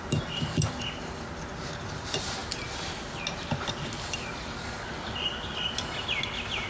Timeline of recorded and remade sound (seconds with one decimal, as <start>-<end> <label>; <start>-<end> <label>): 0.0-6.7 recorded